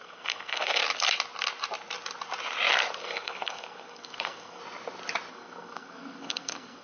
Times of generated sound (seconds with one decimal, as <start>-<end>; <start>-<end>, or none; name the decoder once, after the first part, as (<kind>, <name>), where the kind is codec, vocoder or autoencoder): 0.0-0.8 (codec, SNAC); 3.0-4.6; 5.3-6.8